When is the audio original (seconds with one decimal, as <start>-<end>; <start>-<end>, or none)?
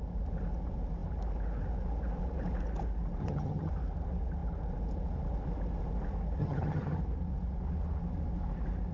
0.0-3.2; 3.7-6.4; 7.0-8.9